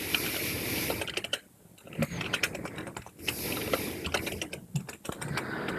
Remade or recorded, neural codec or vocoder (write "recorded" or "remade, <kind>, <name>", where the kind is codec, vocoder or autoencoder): recorded